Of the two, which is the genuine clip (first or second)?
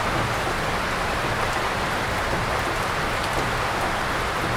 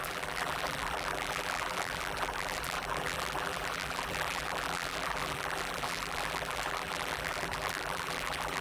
first